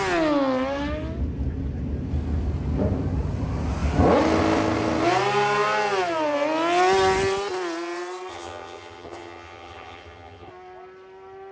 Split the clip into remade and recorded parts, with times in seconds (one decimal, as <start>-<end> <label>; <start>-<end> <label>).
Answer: 0.0-8.3 recorded; 8.3-10.5 remade; 10.5-11.5 recorded